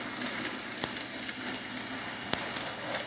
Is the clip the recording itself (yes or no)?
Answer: yes